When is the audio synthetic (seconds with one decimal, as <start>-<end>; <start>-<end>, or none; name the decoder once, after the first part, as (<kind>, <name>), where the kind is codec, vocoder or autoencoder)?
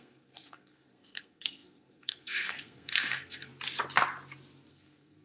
0.0-3.5 (codec, SNAC); 4.7-5.2